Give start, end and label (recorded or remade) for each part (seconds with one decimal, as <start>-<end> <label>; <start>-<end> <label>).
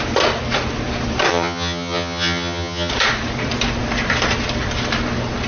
0.0-1.3 recorded; 1.3-2.9 remade; 2.9-5.5 recorded